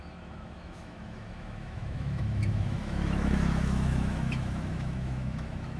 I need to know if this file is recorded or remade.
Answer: remade